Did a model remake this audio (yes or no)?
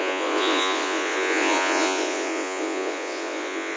yes